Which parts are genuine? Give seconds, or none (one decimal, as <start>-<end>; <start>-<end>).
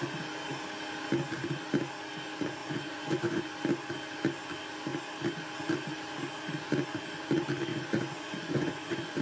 0.0-2.6; 3.4-7.7